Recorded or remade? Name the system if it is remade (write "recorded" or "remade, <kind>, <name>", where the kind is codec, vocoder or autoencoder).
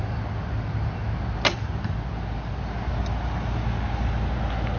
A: recorded